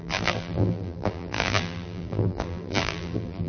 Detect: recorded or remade remade